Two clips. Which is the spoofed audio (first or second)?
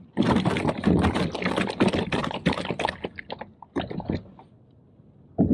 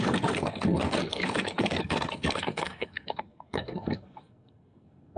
second